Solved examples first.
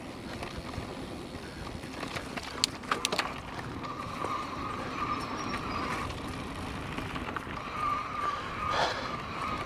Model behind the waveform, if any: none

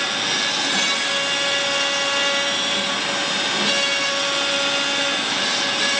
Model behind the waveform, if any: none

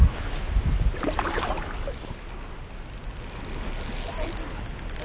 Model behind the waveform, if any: none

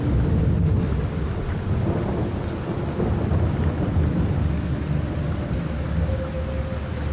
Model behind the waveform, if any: none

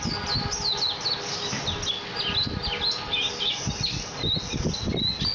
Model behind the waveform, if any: none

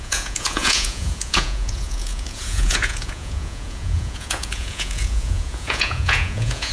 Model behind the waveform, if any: vocoder, Vocos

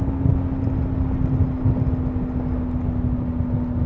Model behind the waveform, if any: none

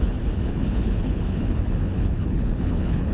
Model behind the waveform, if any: codec, HILCodec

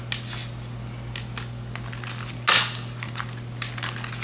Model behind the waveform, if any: none